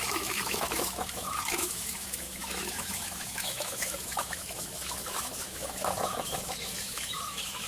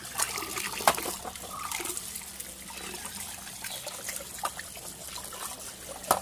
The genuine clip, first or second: second